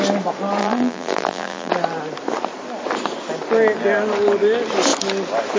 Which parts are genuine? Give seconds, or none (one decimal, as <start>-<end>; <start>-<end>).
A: 0.0-0.6; 1.7-5.6